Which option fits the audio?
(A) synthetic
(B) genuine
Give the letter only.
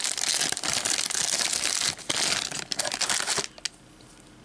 B